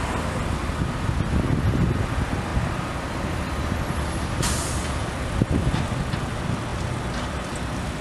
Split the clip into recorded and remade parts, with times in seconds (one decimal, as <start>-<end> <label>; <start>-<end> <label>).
0.0-8.0 recorded